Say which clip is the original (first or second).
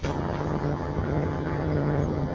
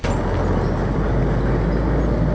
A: second